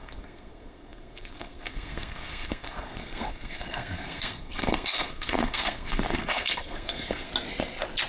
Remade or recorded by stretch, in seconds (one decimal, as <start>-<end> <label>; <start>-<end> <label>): 0.0-7.3 remade; 7.3-8.1 recorded